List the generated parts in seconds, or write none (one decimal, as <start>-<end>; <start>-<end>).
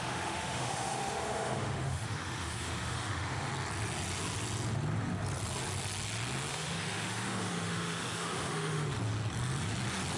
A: 0.0-3.5; 6.5-8.9